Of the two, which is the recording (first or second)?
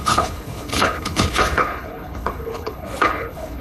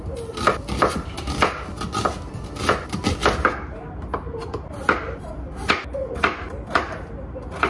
second